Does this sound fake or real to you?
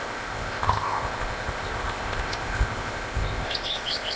fake